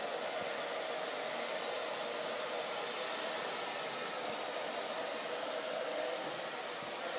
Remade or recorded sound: recorded